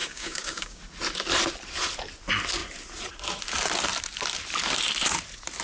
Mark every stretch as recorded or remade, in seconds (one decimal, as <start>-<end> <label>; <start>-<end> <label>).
0.0-0.8 remade; 0.8-5.6 recorded